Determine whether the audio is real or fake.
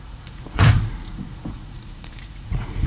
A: fake